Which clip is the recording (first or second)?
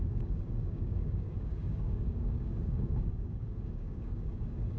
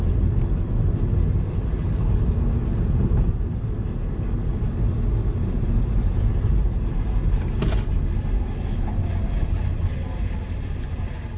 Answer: second